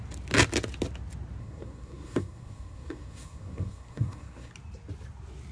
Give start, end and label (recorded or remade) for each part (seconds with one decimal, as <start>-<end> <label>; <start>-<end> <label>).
0.0-1.4 recorded; 1.4-4.5 remade; 4.5-5.5 recorded